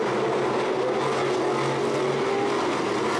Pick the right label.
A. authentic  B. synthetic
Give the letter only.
A